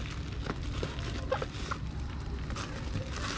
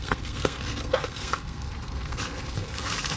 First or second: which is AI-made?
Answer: second